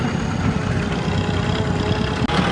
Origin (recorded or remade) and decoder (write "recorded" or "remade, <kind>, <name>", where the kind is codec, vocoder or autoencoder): recorded